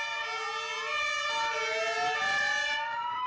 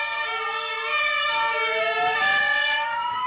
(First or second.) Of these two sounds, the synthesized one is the second